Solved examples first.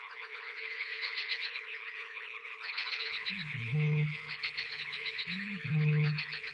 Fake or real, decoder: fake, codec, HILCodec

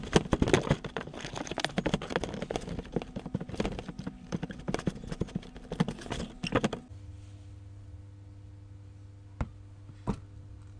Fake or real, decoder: real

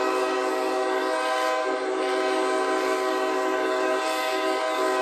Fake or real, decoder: fake, codec, DAC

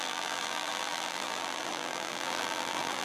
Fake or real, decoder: fake, vocoder, BigVGAN v2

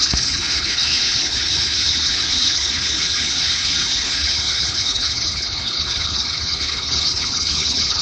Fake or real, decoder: fake, codec, HILCodec